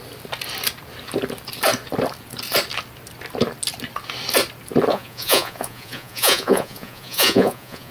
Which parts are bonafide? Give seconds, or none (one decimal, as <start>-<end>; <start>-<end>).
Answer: 0.0-4.9